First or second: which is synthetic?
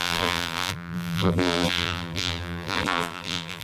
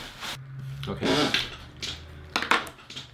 first